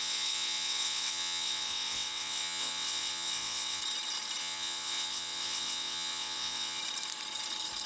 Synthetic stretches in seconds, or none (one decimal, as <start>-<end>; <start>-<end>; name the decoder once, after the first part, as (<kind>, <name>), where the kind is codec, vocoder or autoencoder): 0.0-3.8 (vocoder, WaveNeXt); 4.4-6.8